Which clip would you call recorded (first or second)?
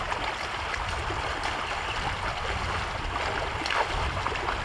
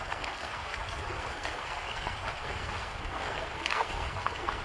first